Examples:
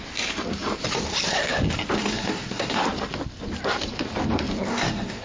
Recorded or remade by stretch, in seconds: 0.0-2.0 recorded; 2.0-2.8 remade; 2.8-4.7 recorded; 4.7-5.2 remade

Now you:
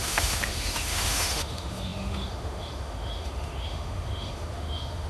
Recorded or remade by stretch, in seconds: 0.0-5.1 remade